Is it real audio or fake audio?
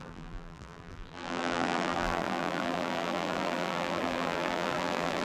fake